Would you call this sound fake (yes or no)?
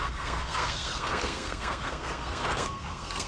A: yes